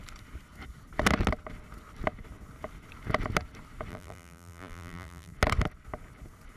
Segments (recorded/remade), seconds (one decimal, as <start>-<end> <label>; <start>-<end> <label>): 0.0-3.9 recorded; 3.9-5.3 remade; 5.3-6.6 recorded